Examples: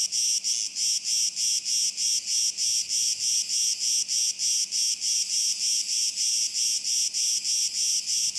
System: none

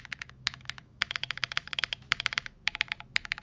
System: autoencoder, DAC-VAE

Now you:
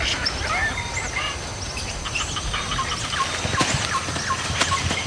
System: none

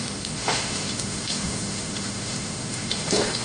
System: autoencoder, DAC-VAE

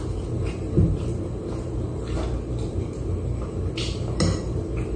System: none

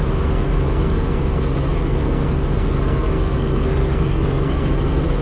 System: codec, SNAC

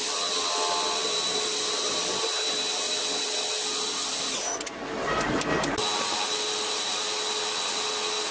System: none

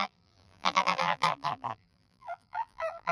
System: vocoder, BigVGAN v2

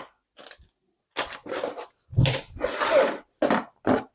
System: none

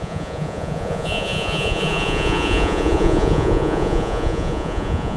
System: vocoder, Vocos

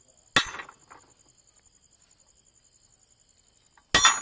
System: none